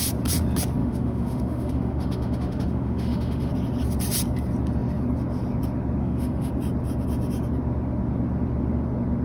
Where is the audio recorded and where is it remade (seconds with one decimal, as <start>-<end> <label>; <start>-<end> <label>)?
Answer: 0.0-0.8 recorded; 0.8-3.5 remade; 3.5-6.0 recorded; 6.0-6.5 remade; 6.5-9.2 recorded